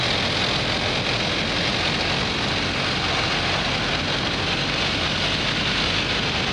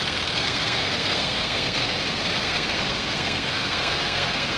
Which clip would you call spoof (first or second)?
second